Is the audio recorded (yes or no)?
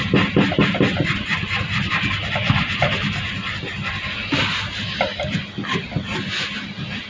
yes